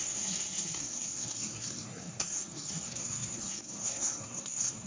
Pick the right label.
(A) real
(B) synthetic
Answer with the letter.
B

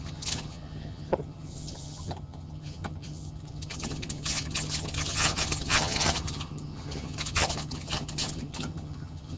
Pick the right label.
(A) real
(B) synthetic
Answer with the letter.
B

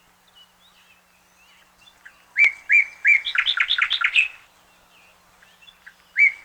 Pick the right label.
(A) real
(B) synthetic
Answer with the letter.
A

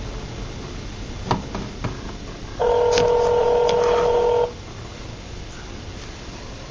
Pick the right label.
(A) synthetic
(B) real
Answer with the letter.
B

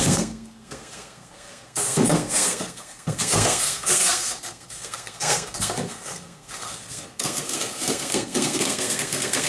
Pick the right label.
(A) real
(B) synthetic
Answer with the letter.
B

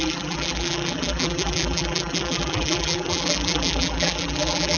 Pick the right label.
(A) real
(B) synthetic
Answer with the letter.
B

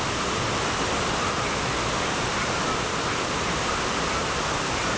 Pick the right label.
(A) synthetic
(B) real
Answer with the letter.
B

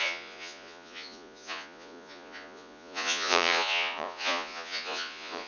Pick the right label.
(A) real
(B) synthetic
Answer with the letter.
B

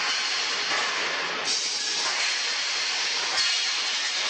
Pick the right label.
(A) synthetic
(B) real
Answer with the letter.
B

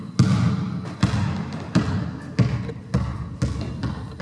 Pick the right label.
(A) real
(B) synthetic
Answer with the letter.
A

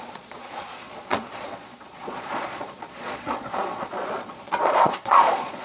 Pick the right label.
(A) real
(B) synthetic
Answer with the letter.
B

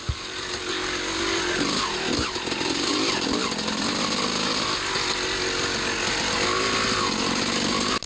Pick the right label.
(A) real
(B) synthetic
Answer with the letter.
A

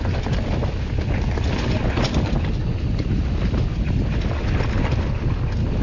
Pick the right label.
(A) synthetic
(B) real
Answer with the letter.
B